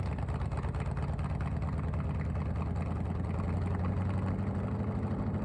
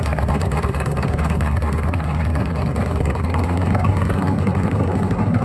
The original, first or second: first